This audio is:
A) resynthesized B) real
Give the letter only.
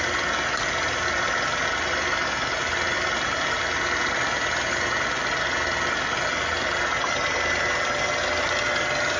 B